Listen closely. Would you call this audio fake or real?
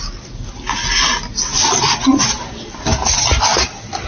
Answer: real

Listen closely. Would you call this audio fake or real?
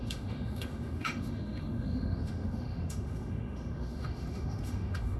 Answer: fake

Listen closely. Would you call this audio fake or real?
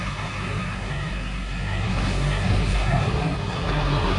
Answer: fake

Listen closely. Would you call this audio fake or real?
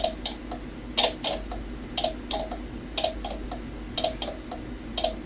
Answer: real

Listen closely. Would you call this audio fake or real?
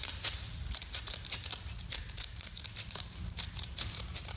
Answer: fake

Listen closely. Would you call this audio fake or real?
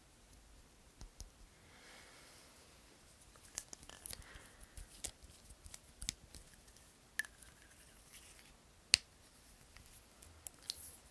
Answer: real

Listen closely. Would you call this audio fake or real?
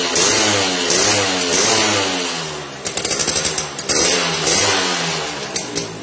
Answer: real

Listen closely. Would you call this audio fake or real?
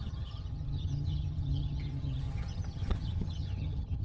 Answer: fake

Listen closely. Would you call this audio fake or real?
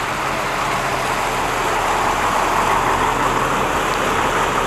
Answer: real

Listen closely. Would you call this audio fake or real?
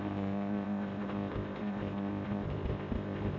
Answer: fake